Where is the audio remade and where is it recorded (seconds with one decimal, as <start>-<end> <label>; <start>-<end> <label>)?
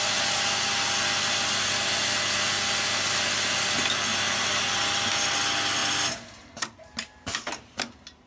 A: 0.0-5.8 recorded; 5.8-8.3 remade